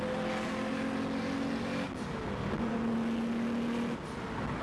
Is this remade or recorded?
recorded